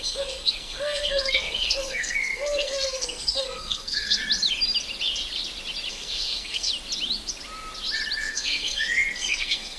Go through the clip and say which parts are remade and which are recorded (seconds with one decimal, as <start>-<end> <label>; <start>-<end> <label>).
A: 0.0-4.2 remade; 4.2-5.9 recorded; 5.9-6.7 remade; 6.7-8.2 recorded; 8.2-9.8 remade